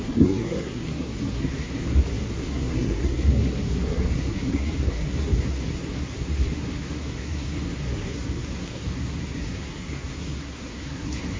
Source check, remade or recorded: remade